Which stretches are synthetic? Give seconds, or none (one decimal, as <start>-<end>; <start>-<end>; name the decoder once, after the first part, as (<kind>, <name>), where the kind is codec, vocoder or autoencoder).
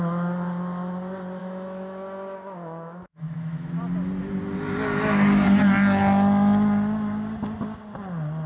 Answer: 1.4-3.7 (autoencoder, DAC-VAE)